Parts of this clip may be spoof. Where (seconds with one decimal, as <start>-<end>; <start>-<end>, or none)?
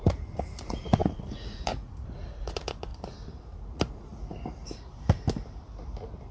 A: 0.0-2.9; 3.4-4.1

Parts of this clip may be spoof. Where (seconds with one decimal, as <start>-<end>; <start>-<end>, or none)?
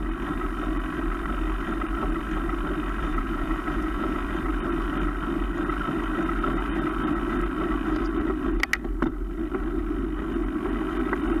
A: 3.1-4.2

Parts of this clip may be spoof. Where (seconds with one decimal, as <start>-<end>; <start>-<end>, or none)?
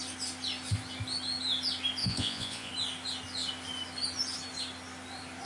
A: 2.0-2.7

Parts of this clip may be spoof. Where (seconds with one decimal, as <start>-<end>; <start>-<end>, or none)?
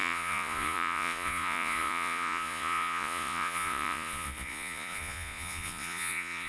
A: 0.0-6.5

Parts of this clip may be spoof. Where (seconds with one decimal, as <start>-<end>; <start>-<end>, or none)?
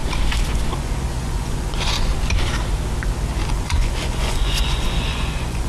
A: 0.7-2.1; 3.5-5.7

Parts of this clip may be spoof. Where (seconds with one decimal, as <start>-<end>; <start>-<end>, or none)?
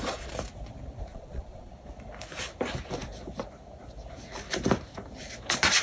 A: 1.1-1.7